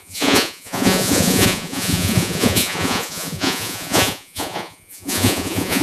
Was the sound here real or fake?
fake